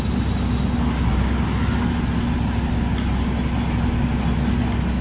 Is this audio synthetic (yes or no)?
no